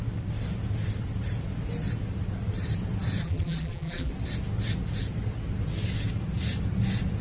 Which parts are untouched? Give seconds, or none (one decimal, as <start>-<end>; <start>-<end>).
0.0-3.2; 4.1-7.2